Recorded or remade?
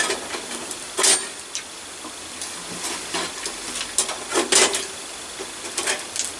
recorded